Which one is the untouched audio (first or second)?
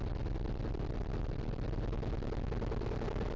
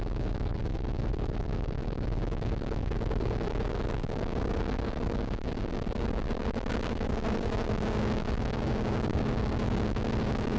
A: first